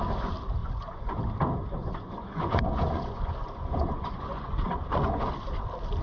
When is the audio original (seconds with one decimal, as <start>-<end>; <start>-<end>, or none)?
0.0-0.6; 1.2-1.8; 5.3-6.0

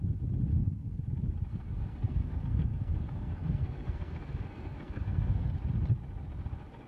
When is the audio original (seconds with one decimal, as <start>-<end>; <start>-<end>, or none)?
0.0-0.5; 1.0-1.5; 5.5-6.9

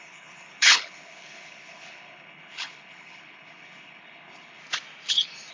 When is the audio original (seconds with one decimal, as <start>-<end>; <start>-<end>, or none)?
4.6-5.5

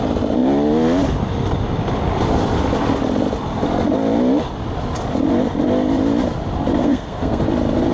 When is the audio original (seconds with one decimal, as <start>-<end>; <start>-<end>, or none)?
0.0-6.8; 7.4-7.9